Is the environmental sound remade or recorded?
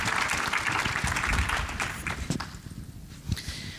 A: recorded